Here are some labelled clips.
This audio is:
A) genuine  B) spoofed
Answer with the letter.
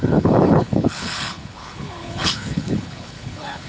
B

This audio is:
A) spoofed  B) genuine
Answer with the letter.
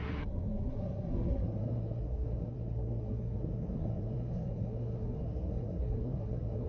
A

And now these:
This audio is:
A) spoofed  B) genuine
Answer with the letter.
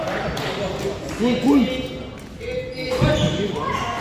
B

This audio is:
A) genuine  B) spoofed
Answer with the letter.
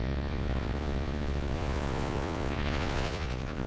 B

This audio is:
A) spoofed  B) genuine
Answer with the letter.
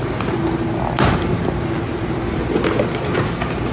B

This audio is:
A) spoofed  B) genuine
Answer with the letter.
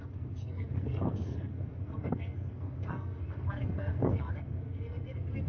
A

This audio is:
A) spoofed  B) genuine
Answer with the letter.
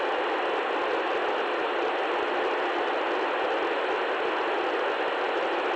B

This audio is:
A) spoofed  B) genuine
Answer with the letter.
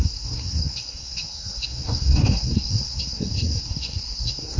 A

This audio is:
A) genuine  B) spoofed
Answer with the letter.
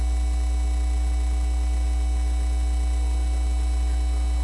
A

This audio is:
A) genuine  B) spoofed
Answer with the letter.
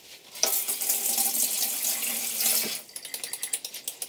A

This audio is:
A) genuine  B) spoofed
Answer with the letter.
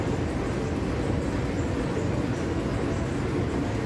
A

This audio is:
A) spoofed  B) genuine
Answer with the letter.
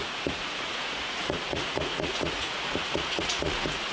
A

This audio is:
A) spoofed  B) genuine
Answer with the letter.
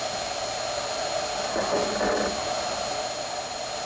B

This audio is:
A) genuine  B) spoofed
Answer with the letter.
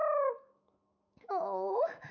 B